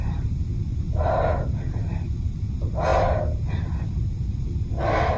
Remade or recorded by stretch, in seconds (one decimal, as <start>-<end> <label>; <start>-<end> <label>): 0.0-5.2 recorded